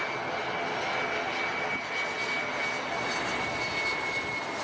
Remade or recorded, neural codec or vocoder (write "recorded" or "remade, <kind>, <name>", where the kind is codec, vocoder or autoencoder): recorded